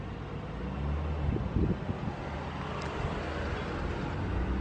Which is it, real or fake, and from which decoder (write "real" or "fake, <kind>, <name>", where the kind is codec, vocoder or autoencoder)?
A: real